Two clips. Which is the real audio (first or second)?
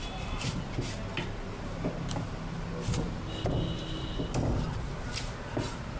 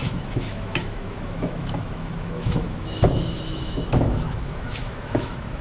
first